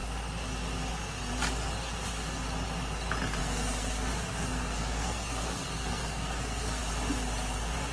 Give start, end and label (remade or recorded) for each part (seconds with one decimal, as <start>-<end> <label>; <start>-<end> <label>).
0.0-3.4 recorded; 3.4-6.8 remade; 6.8-7.9 recorded